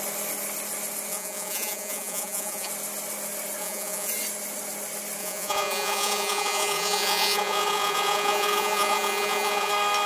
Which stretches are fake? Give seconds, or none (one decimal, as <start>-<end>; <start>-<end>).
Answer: 1.1-2.7; 3.6-4.1; 5.2-9.7